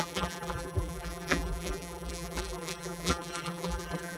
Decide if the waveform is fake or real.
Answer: fake